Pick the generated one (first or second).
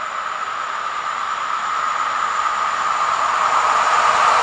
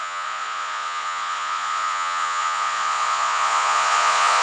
second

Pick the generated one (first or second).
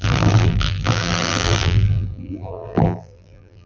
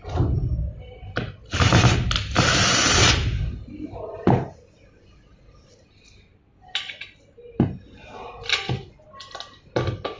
first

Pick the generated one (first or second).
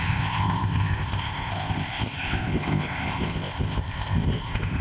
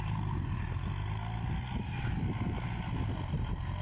first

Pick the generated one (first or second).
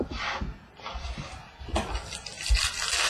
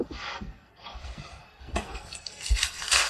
second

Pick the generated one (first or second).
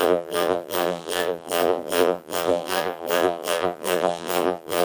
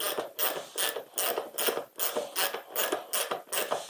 first